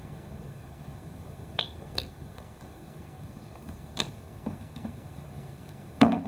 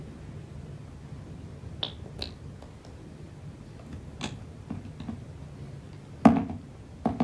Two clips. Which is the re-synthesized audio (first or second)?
first